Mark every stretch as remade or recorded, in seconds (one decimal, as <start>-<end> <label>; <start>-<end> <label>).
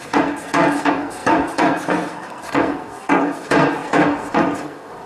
0.0-5.1 remade